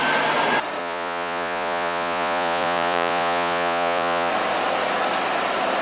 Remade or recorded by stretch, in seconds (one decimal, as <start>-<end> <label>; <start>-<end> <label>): 0.0-0.8 recorded; 0.8-4.3 remade; 4.3-5.8 recorded